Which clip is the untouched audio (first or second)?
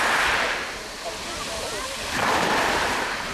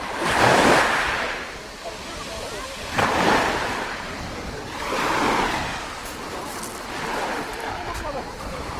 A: first